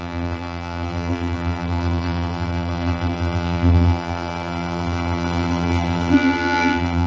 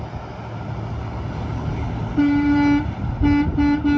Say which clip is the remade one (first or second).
first